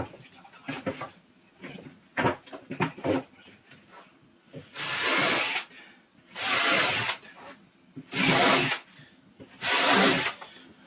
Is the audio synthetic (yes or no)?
no